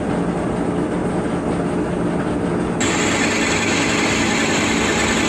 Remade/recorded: recorded